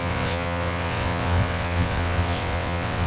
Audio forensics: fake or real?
fake